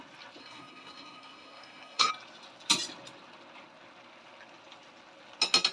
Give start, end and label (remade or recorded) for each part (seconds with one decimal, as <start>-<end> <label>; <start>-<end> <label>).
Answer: 0.0-0.4 recorded; 0.4-2.1 remade; 2.1-5.7 recorded